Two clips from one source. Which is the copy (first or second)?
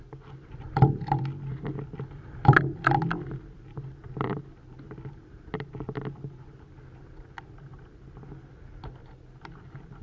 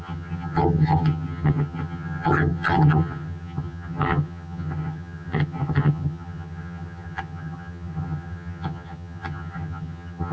second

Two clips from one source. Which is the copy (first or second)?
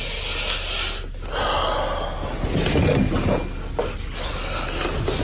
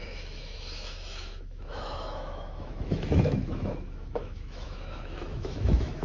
second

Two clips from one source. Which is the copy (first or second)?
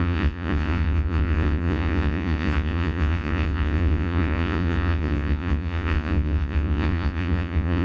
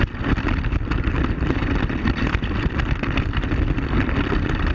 first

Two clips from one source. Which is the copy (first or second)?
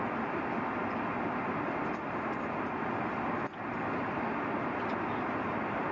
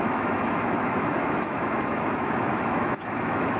second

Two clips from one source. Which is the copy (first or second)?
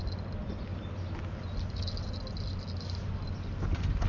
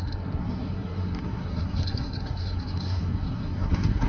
second